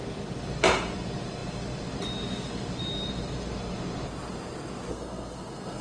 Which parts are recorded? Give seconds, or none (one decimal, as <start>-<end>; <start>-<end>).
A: 0.0-4.9